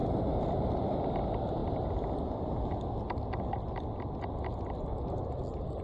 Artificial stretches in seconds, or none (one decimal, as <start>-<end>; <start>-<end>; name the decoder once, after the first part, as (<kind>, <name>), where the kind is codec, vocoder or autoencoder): none